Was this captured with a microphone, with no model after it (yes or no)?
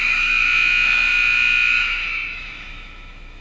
no